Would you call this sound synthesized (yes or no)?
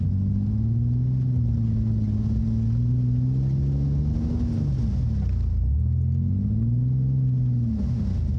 no